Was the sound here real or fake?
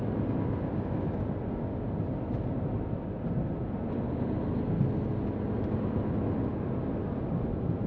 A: real